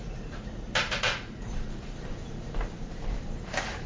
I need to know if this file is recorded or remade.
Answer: remade